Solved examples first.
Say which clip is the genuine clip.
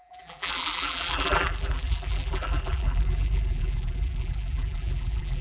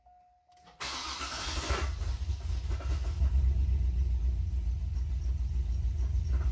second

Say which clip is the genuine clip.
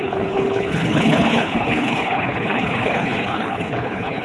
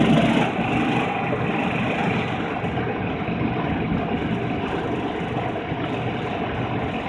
second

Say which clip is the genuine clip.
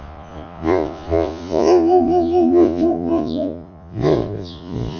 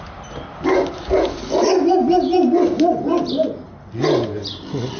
second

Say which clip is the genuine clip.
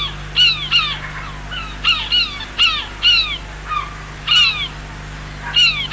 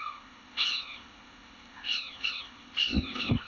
first